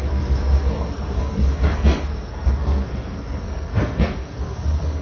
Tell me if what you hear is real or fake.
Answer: fake